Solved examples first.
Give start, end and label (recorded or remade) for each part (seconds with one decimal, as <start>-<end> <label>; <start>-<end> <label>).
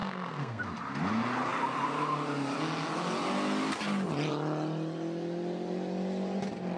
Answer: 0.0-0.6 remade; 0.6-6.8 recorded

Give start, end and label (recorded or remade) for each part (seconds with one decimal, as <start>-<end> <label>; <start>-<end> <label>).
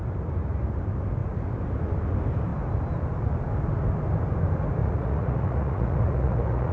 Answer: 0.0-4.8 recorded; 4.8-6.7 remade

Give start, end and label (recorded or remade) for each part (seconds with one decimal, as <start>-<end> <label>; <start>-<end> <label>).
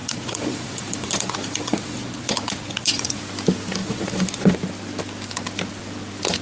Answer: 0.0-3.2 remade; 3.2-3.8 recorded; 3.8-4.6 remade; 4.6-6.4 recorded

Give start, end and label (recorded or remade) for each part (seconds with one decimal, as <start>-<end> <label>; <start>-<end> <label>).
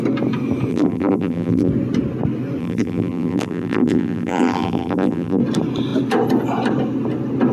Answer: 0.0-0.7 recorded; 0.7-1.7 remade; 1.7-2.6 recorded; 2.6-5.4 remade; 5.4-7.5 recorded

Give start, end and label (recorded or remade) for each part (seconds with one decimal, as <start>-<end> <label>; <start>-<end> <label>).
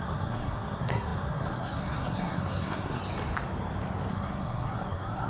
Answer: 0.0-3.0 remade; 3.0-4.1 recorded; 4.1-5.3 remade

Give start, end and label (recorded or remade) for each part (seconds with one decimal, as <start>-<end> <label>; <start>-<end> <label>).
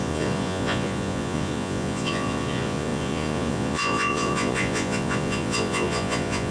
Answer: 0.0-6.5 remade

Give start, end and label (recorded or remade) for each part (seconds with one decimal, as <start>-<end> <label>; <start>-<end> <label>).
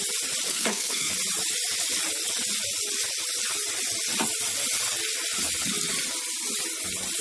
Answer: 0.0-0.5 recorded; 0.5-1.1 remade; 1.1-7.2 recorded